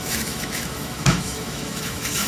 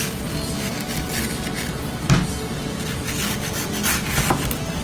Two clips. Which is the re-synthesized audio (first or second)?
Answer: first